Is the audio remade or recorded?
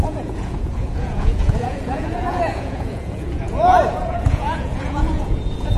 remade